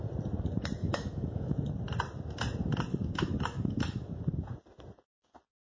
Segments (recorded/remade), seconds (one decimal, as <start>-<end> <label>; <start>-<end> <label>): 0.0-0.8 recorded; 0.8-1.7 remade; 1.7-2.9 recorded; 2.9-4.2 remade; 4.2-5.6 recorded